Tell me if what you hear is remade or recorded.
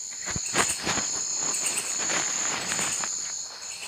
recorded